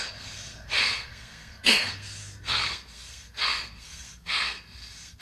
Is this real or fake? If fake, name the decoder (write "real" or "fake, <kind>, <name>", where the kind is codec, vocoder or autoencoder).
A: fake, codec, SNAC